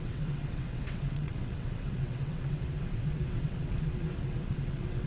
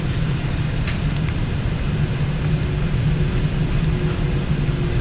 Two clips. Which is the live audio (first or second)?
second